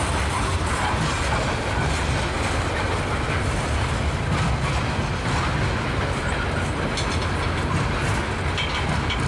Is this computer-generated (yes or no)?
no